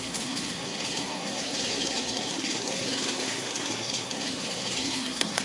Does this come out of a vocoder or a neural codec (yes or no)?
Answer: yes